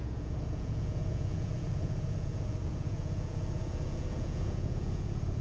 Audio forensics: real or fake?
fake